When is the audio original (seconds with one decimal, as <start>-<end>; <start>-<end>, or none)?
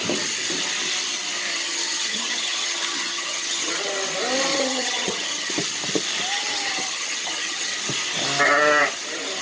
0.0-1.5; 3.9-4.5; 5.5-6.3; 7.7-9.4